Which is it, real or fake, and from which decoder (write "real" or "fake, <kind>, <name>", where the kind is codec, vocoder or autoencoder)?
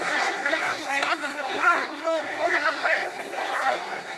fake, codec, SNAC